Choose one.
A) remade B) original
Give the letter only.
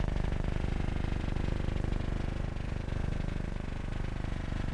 A